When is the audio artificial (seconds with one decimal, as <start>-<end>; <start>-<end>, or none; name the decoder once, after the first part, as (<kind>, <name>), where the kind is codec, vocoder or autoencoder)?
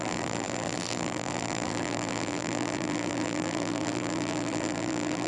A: 0.0-5.3 (vocoder, BigVGAN v2)